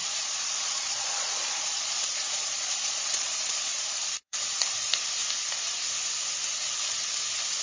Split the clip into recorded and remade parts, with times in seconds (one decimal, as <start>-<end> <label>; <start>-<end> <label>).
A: 0.0-4.6 remade; 4.6-7.6 recorded